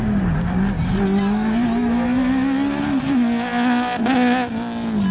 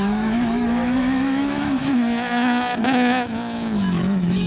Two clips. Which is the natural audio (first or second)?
first